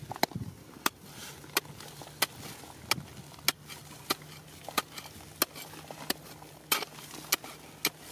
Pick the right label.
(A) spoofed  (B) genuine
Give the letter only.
B